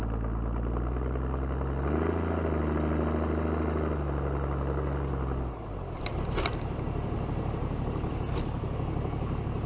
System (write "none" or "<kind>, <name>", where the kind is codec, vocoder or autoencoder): none